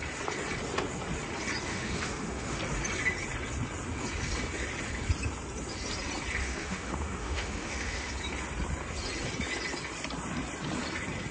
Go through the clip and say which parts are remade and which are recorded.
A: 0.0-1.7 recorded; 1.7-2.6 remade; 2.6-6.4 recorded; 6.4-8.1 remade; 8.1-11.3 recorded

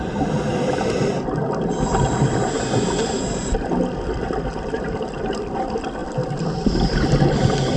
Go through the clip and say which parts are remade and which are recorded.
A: 0.0-7.8 recorded

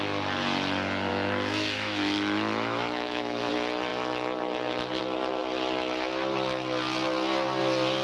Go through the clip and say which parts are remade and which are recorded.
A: 0.0-1.1 recorded; 1.1-3.5 remade; 3.5-8.0 recorded

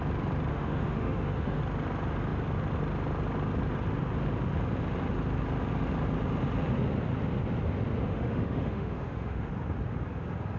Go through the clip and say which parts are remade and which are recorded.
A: 0.0-0.5 recorded; 0.5-1.6 remade; 1.6-8.0 recorded; 8.0-9.5 remade; 9.5-10.6 recorded

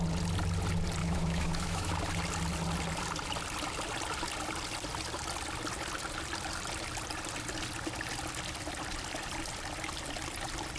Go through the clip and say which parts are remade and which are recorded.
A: 0.0-1.0 recorded; 1.0-1.9 remade; 1.9-10.8 recorded

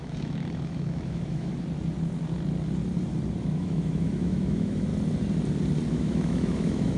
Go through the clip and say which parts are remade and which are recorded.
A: 0.0-1.5 remade; 1.5-3.4 recorded; 3.4-4.9 remade; 4.9-5.9 recorded; 5.9-7.0 remade